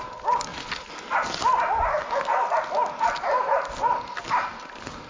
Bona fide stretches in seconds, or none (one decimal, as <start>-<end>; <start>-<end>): 0.0-5.1